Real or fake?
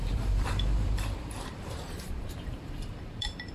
fake